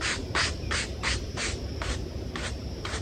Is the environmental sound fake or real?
fake